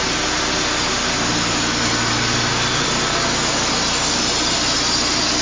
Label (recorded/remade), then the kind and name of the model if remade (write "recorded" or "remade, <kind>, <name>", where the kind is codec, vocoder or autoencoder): recorded